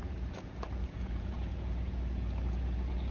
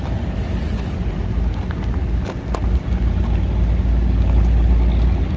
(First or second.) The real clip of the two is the second